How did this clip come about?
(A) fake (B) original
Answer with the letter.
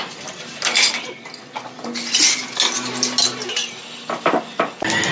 B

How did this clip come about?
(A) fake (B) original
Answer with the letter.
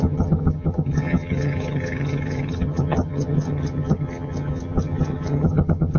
A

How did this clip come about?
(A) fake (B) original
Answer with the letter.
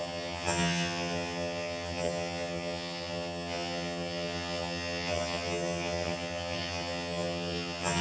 A